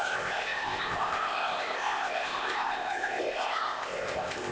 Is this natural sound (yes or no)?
no